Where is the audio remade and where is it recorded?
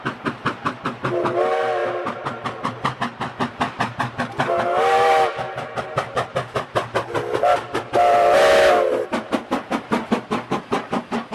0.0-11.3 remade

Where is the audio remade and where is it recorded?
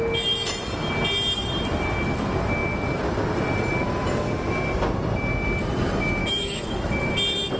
0.0-6.2 recorded; 6.2-7.1 remade; 7.1-7.6 recorded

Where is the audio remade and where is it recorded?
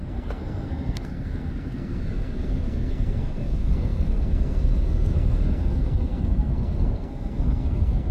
0.0-8.1 remade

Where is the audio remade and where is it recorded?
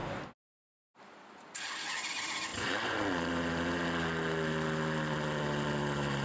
0.0-2.5 recorded; 2.5-3.3 remade; 3.3-6.2 recorded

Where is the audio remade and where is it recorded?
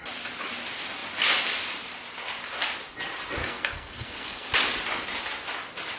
0.0-3.4 recorded; 3.4-4.5 remade; 4.5-6.0 recorded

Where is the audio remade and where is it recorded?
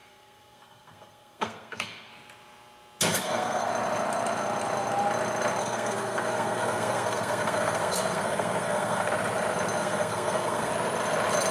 0.0-2.1 remade; 2.1-3.1 recorded; 3.1-3.7 remade; 3.7-5.6 recorded; 5.6-9.1 remade; 9.1-9.8 recorded; 9.8-10.7 remade; 10.7-11.5 recorded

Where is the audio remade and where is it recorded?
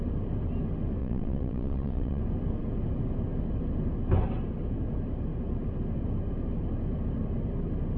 0.0-1.0 recorded; 1.0-2.2 remade; 2.2-8.0 recorded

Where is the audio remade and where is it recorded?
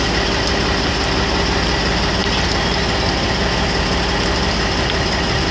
0.0-5.5 recorded